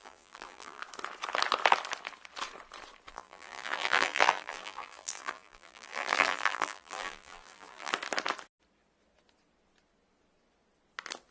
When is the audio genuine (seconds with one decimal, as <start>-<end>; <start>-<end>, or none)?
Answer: 0.8-3.1; 7.9-11.3